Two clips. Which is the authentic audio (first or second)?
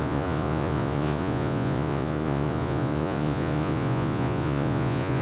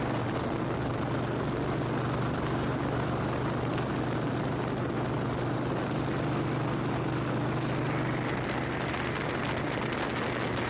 second